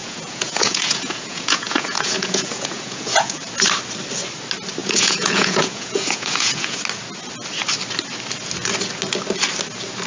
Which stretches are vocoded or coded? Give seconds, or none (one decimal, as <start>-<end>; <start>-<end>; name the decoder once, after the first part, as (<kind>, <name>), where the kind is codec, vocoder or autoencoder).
0.0-3.5 (vocoder, Vocos); 4.8-6.8